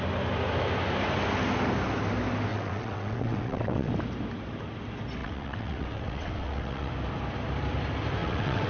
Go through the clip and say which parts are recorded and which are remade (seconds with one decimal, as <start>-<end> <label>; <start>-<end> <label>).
0.0-2.5 recorded; 2.5-3.9 remade; 3.9-5.2 recorded; 5.2-6.9 remade; 6.9-8.2 recorded; 8.2-8.7 remade